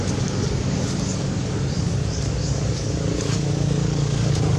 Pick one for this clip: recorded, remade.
remade